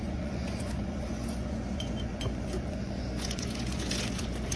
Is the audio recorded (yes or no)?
no